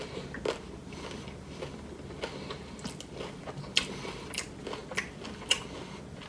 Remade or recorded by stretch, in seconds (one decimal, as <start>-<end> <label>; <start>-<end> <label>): 0.0-6.3 recorded